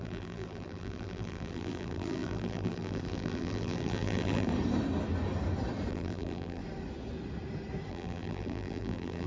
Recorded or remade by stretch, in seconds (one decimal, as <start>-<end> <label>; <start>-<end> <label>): 0.0-4.5 remade; 4.5-5.9 recorded; 5.9-6.6 remade; 6.6-7.9 recorded; 7.9-9.3 remade

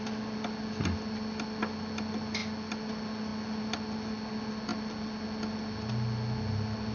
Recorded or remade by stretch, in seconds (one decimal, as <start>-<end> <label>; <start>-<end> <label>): 0.0-6.9 recorded

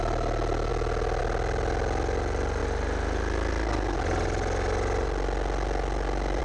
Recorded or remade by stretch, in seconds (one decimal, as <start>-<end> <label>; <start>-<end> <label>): 0.0-6.4 recorded